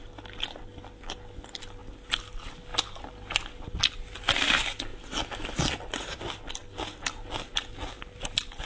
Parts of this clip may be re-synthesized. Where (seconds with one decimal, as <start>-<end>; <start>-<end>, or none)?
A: none